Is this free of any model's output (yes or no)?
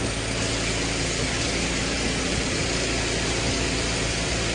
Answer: yes